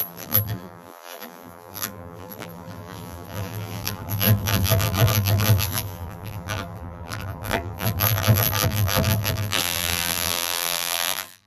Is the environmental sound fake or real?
fake